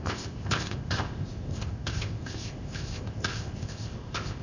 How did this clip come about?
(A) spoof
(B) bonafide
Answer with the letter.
A